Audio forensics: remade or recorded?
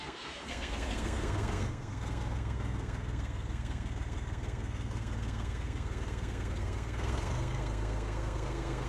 remade